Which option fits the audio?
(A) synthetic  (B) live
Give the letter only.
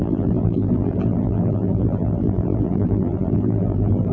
A